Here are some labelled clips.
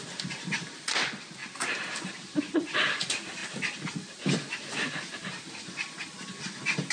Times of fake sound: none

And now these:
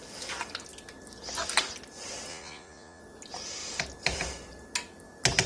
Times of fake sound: 2.3-3.0 (vocoder, Vocos)

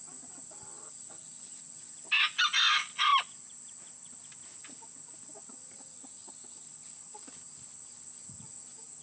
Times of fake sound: none

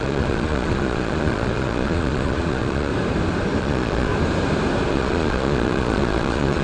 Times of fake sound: 0.0-2.9 (vocoder, Vocos); 3.6-4.1; 4.9-6.6

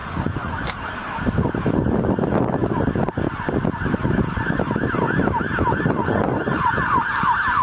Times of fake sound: 0.0-0.7 (vocoder, Vocos); 6.0-6.7

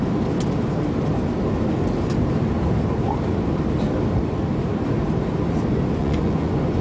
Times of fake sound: 6.0-6.8 (vocoder, Vocos)

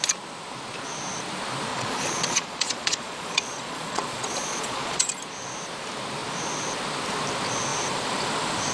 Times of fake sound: 1.7-5.1 (vocoder, Vocos)

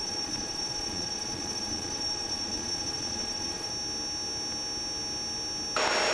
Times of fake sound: 0.0-3.7 (vocoder, Vocos)